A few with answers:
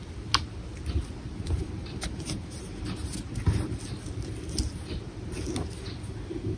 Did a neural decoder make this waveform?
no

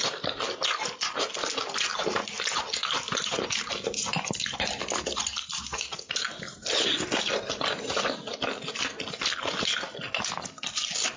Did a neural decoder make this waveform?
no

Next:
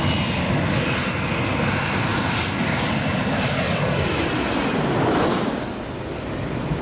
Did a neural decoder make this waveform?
no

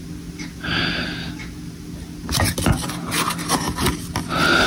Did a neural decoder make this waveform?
no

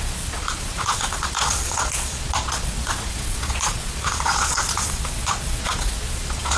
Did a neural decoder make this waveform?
yes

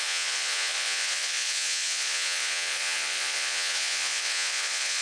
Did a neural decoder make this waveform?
yes